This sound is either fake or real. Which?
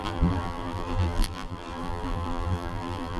fake